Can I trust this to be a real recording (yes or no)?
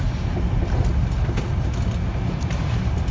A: yes